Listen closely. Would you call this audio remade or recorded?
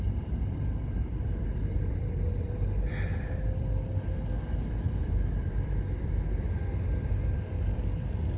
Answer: remade